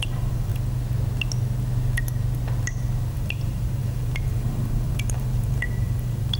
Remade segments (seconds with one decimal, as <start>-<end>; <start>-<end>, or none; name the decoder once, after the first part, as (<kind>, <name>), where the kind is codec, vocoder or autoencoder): 0.0-0.5 (vocoder, BigVGAN v2); 3.1-6.4